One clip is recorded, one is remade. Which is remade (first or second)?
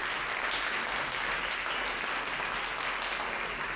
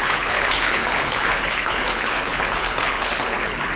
second